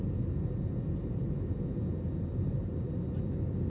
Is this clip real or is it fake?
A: real